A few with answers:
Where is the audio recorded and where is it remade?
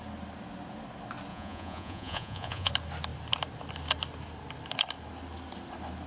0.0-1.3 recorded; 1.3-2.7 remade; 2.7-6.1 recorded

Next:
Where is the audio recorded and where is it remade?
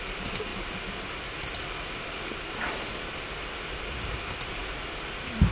0.0-5.5 recorded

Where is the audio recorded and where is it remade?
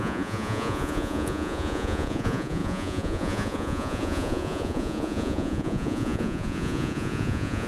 0.0-7.7 remade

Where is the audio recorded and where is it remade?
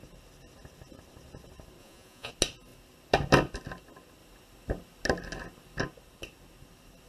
0.0-1.8 recorded; 1.8-2.3 remade; 2.3-7.1 recorded